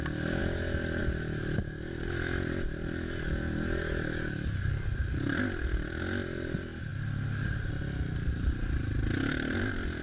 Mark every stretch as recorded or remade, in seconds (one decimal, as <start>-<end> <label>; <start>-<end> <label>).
0.0-10.0 recorded